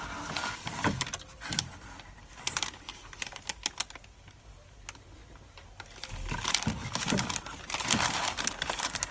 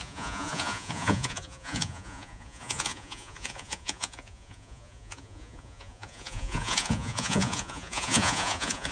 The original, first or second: first